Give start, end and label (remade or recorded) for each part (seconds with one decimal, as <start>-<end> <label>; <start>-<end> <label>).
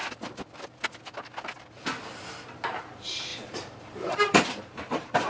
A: 0.0-2.8 recorded; 2.8-5.3 remade